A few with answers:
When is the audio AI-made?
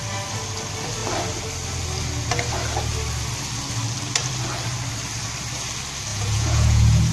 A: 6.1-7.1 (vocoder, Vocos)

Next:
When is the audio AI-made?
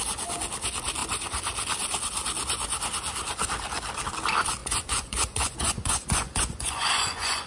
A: 4.6-7.5 (vocoder, Vocos)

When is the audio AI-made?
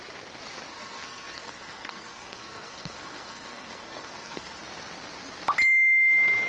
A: 0.7-4.6 (codec, SNAC)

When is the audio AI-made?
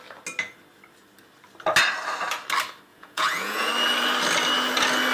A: 2.9-3.7 (vocoder, Vocos)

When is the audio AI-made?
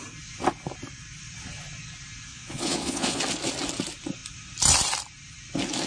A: 2.3-3.2 (vocoder, Vocos)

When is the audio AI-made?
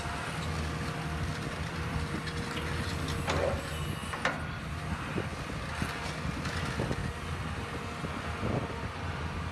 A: 1.3-2.2 (vocoder, BigVGAN v2); 4.0-4.7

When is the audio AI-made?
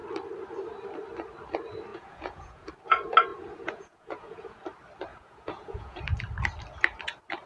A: 1.9-2.7 (vocoder, Vocos); 3.3-4.6; 5.1-6.0